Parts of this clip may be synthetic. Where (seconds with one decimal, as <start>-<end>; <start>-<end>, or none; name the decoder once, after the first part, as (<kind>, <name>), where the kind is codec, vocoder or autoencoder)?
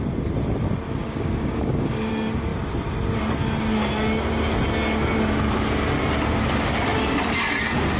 1.0-2.1 (codec, DAC)